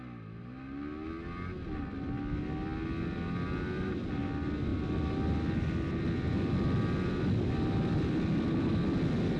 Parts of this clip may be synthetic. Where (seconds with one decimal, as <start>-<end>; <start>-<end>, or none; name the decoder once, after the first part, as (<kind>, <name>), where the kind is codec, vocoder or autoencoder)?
none